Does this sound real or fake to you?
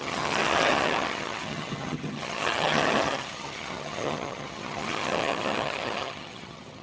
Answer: fake